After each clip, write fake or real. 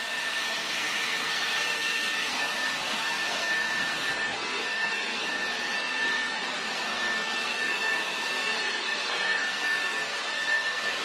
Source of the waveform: fake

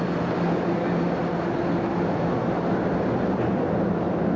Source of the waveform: real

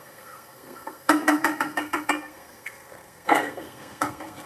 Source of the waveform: fake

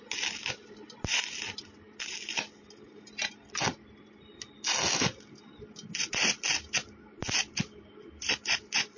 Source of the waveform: real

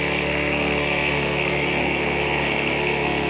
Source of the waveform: fake